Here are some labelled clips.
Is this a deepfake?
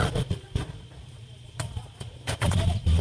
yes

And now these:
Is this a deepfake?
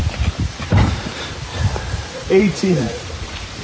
yes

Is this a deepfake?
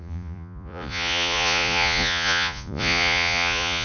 yes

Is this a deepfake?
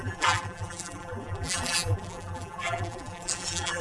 yes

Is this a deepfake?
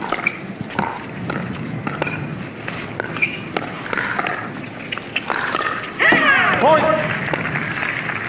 no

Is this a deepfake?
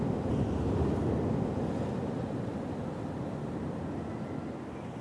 no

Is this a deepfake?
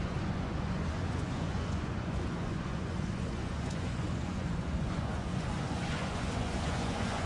yes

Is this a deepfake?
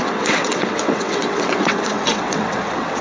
yes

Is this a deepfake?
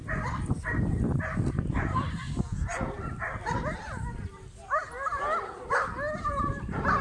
no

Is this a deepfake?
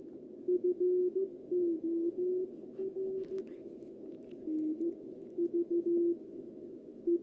yes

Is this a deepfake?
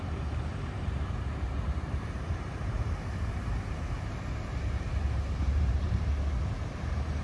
yes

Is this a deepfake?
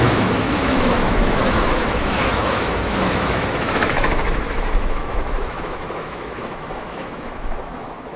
yes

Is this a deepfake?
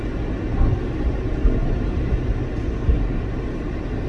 no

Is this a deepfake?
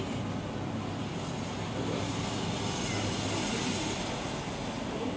no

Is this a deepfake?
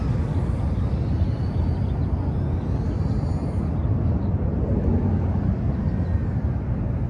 no